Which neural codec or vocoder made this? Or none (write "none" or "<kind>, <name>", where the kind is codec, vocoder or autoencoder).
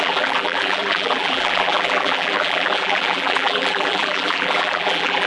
vocoder, BigVGAN v2